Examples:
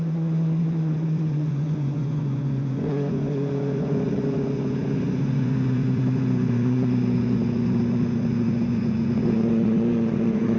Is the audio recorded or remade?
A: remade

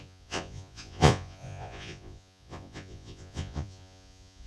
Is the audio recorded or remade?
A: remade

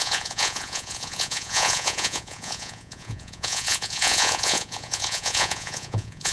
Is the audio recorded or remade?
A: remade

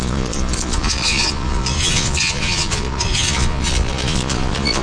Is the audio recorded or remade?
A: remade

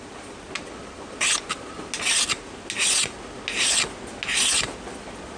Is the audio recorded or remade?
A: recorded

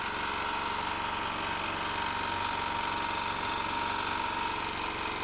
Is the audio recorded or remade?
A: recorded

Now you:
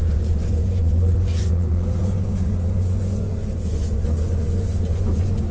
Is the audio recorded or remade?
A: remade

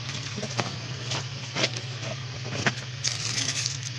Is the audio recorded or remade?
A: remade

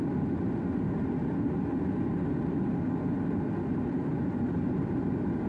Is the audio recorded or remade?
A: remade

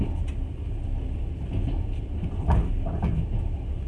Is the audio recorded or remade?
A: recorded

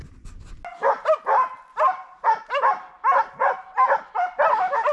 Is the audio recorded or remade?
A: recorded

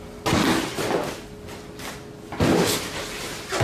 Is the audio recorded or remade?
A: recorded